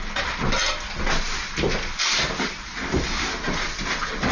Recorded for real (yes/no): yes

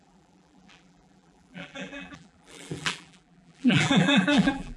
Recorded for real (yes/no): no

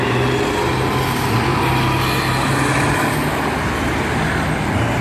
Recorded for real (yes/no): yes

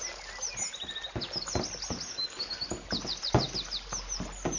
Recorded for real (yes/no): yes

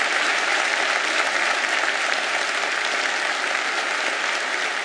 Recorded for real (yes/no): yes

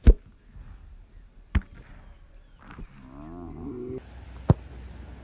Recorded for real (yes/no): yes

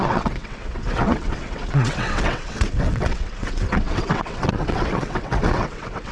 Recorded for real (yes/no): no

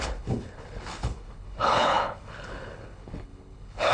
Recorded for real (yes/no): no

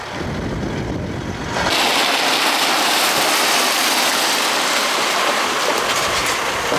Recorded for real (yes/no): yes